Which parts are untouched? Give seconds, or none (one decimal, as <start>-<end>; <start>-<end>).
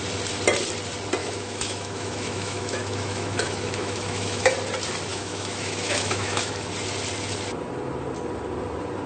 0.0-1.2; 4.5-5.1; 6.5-9.1